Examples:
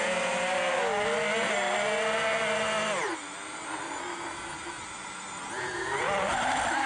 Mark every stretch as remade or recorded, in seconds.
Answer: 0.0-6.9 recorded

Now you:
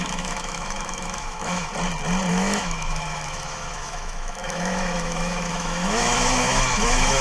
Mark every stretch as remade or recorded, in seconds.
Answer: 0.0-1.7 remade; 1.7-2.3 recorded; 2.3-7.2 remade

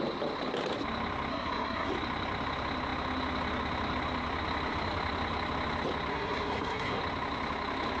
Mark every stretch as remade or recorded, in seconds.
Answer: 0.0-1.3 recorded; 1.3-1.9 remade; 1.9-6.1 recorded; 6.1-7.0 remade; 7.0-8.0 recorded

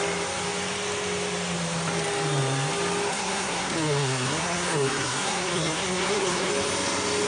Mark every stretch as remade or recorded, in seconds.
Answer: 0.0-3.1 recorded; 3.1-6.5 remade; 6.5-7.3 recorded

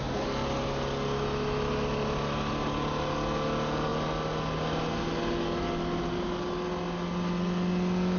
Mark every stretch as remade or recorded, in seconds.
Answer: 0.0-8.2 recorded

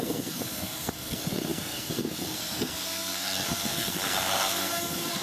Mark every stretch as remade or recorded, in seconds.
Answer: 0.0-5.2 remade

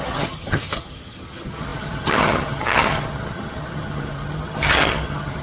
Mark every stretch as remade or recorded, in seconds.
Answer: 0.0-5.4 remade

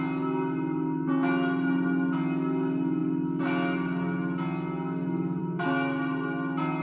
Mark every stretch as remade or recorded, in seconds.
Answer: 0.0-6.8 recorded